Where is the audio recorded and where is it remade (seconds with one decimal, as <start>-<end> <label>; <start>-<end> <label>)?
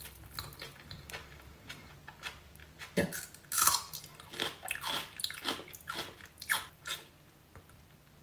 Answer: 0.0-8.2 recorded